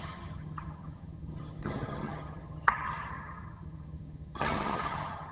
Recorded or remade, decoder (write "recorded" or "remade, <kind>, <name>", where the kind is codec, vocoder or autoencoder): remade, vocoder, HiFi-GAN